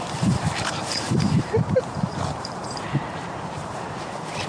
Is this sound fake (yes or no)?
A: yes